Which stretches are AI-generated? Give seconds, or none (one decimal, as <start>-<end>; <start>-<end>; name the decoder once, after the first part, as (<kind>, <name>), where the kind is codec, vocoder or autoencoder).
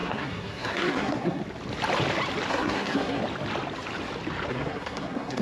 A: 0.0-1.4 (codec, SNAC); 2.5-3.2; 4.5-5.4